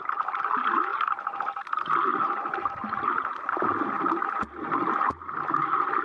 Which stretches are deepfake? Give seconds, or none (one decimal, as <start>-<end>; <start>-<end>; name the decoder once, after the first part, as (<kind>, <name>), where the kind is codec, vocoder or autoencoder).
0.9-1.4 (vocoder, BigVGAN v2); 2.1-3.2